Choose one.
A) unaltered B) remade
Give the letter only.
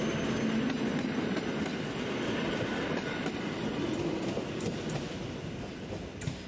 A